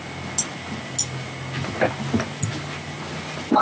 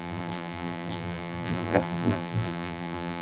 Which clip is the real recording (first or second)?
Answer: first